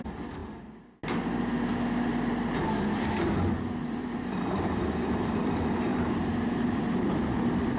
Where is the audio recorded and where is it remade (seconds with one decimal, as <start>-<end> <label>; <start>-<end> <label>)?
0.0-0.4 recorded; 0.4-1.0 remade; 1.0-3.8 recorded; 3.8-5.5 remade; 5.5-5.9 recorded; 5.9-7.1 remade; 7.1-7.8 recorded